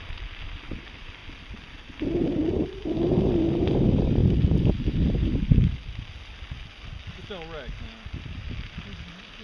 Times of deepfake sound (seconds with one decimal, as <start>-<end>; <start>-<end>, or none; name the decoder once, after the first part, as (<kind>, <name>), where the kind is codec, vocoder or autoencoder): none